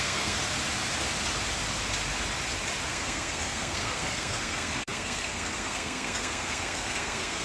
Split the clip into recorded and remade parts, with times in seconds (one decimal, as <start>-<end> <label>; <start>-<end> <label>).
0.0-0.4 remade; 0.4-2.9 recorded; 2.9-7.4 remade